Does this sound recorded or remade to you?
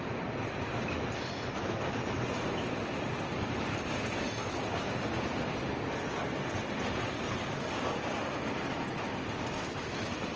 recorded